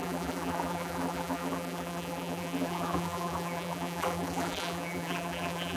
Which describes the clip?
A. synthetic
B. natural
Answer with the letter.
A